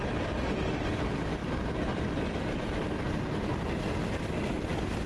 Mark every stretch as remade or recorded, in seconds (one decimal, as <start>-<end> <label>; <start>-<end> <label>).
0.0-5.1 recorded